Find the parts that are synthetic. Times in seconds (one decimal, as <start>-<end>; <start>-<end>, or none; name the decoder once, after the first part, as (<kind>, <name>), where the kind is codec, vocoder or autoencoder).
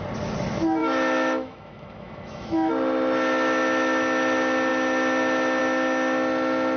0.8-2.7 (autoencoder, DAC-VAE)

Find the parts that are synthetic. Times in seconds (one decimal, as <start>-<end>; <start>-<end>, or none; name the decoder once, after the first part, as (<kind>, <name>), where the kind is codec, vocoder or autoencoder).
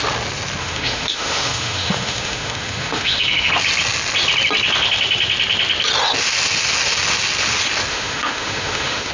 0.6-3.5 (autoencoder, DAC-VAE); 7.9-9.1